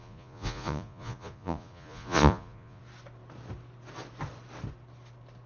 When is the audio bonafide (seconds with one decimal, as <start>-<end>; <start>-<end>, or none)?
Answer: 2.8-5.5